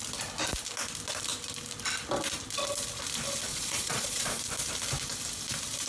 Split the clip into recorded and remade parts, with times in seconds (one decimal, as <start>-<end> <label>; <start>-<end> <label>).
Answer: 0.0-3.5 recorded; 3.5-4.4 remade; 4.4-5.9 recorded